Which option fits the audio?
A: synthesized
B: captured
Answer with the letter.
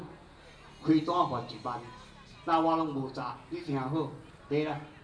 B